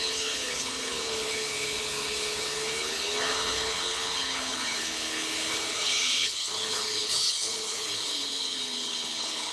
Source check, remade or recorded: remade